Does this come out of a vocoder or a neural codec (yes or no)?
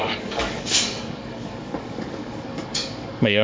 yes